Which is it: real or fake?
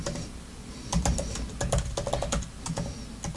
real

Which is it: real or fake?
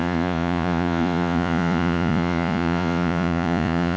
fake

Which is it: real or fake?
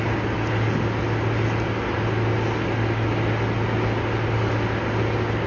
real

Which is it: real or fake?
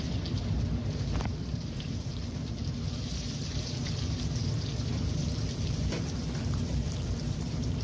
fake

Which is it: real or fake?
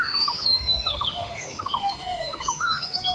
fake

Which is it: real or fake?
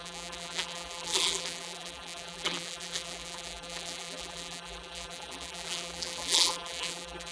fake